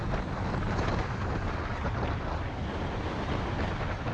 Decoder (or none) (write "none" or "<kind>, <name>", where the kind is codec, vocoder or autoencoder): none